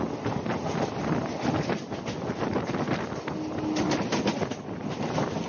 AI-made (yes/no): no